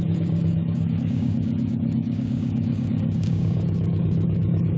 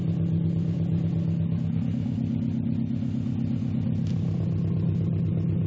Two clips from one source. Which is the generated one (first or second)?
first